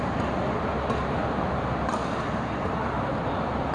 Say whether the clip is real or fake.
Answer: real